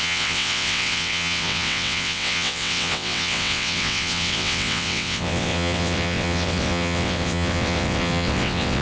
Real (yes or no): no